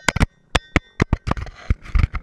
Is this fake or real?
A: real